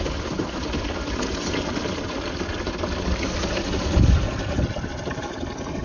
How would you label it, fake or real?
fake